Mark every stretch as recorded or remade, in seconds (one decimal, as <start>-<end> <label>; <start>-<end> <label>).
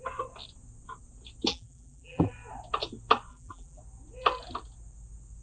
0.0-1.5 recorded; 1.5-2.3 remade; 2.3-3.3 recorded; 3.3-3.8 remade; 3.8-5.4 recorded